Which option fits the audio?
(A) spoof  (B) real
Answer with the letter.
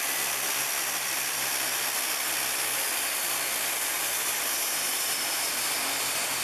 B